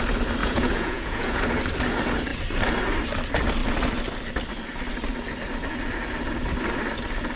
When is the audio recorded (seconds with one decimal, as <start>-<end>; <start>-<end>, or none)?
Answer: 0.0-0.4; 1.4-7.4